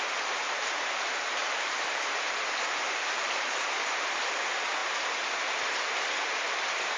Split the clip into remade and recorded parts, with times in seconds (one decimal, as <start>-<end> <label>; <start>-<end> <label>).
0.0-1.4 recorded; 1.4-4.2 remade; 4.2-7.0 recorded